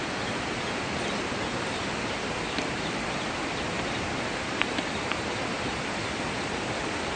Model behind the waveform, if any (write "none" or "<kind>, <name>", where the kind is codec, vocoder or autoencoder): vocoder, BigVGAN v2